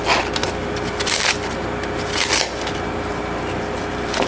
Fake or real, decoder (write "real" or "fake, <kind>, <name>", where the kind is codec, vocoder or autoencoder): real